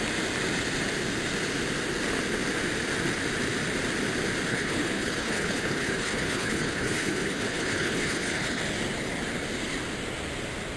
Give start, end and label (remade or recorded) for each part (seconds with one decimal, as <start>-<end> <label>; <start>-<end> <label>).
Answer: 0.0-4.5 recorded; 4.5-8.6 remade; 8.6-10.8 recorded